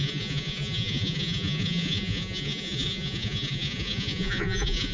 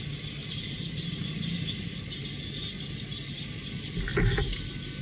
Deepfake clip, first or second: first